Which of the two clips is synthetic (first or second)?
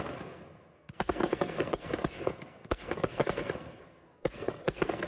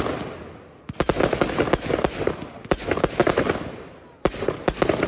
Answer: first